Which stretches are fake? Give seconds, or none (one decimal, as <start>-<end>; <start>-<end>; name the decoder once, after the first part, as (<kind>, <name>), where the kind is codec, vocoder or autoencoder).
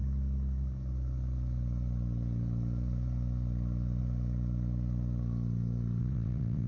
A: 6.0-6.7 (vocoder, WaveNeXt)